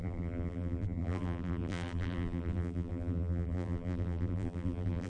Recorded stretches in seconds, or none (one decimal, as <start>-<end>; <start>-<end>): none